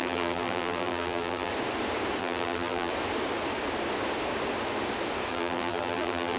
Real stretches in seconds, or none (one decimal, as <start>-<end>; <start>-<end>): 1.5-2.2; 2.9-5.3

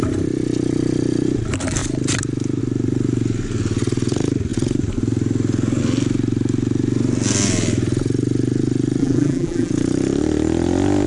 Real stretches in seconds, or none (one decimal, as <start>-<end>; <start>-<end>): 0.0-9.0; 9.7-11.1